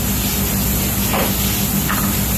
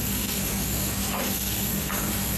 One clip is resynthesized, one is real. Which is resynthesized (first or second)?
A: second